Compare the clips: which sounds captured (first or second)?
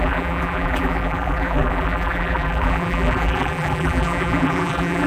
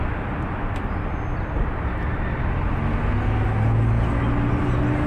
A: second